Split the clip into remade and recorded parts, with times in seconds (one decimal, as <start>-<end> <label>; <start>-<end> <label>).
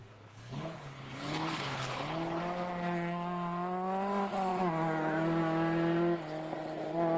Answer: 0.0-2.4 remade; 2.4-7.2 recorded